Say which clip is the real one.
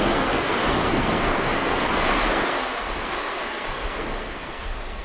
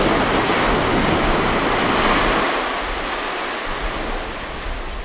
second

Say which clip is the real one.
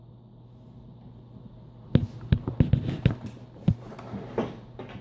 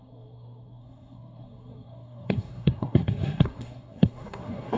first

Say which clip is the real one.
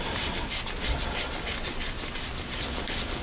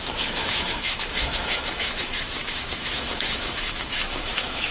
first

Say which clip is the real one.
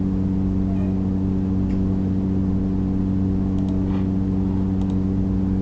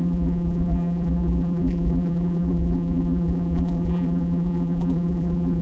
first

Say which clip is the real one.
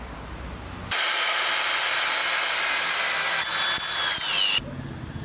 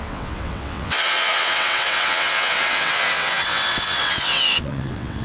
first